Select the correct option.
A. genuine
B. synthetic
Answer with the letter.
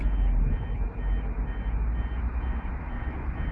A